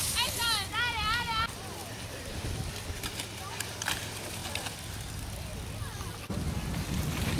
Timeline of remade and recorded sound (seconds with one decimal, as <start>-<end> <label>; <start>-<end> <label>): 0.0-7.4 recorded